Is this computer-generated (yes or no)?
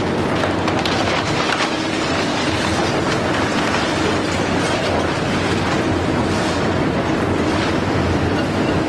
no